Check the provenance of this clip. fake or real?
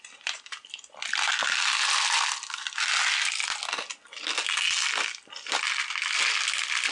real